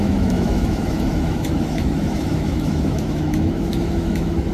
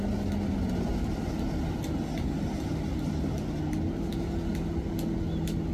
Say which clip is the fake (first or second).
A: first